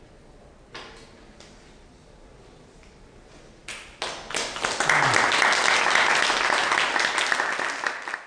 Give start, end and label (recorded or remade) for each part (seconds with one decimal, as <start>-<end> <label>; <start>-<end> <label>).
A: 0.0-8.3 recorded

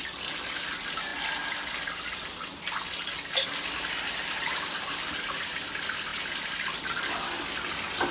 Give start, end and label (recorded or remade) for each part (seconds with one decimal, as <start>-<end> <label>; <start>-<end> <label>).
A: 0.0-8.1 recorded